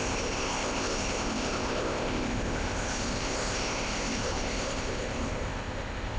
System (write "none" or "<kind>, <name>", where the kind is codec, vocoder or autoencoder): codec, ZipCodec